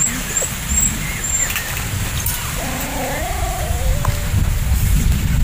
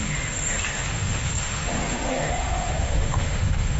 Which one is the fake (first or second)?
second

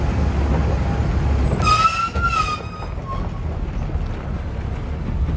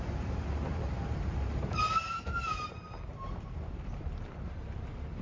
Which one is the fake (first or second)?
second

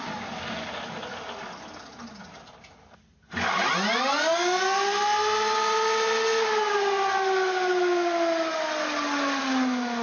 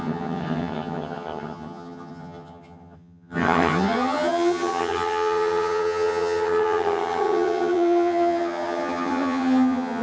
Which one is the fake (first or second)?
second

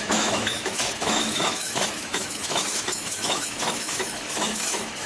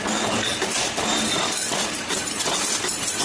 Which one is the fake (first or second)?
first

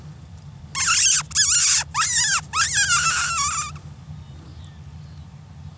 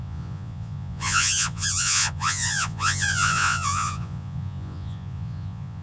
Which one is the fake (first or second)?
second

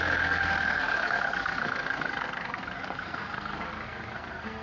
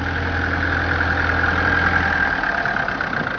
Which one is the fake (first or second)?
first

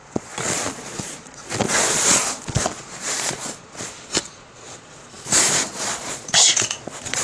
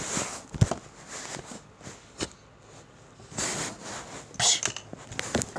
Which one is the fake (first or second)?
first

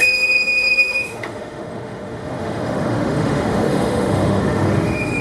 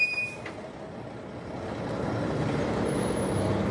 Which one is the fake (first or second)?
first